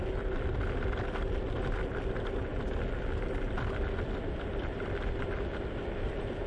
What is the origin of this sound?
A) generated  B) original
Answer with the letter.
B